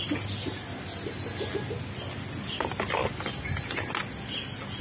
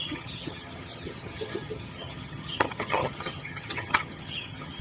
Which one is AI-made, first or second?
second